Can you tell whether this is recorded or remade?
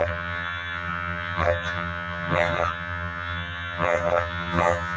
remade